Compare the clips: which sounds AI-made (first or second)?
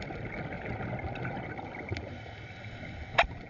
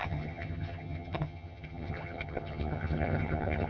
second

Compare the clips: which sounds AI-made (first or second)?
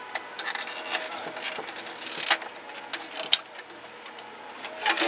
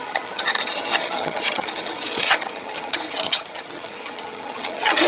second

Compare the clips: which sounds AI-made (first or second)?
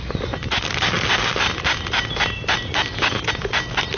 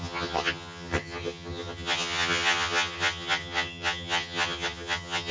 second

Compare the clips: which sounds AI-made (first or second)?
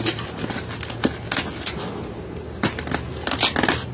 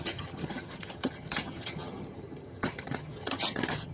second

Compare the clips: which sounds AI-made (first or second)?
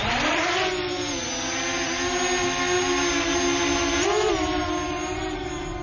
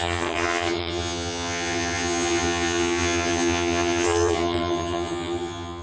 second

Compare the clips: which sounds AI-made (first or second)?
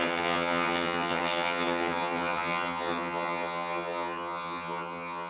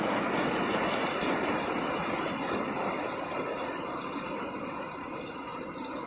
first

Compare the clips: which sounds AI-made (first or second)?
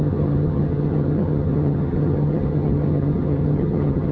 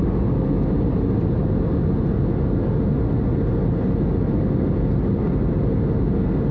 first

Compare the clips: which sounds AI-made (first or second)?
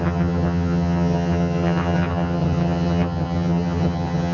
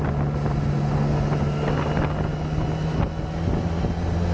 first